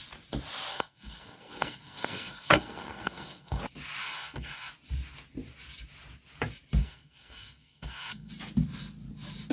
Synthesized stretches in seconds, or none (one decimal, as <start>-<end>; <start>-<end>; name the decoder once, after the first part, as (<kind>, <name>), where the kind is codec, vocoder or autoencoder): 0.7-3.6 (codec, SNAC); 4.0-4.7; 6.8-8.3